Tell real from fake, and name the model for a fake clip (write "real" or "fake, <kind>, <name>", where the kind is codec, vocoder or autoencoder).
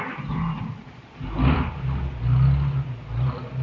real